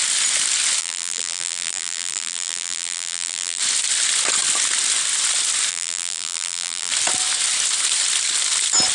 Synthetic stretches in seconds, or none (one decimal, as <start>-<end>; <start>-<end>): 0.8-3.6; 5.7-6.9